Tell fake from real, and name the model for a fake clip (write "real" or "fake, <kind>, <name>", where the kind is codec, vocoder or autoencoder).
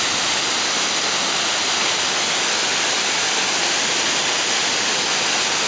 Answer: real